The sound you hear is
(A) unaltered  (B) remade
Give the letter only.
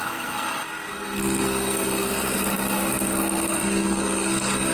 B